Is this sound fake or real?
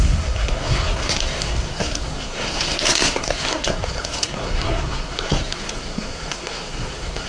fake